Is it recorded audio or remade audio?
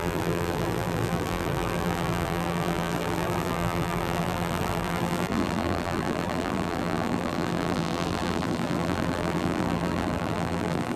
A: remade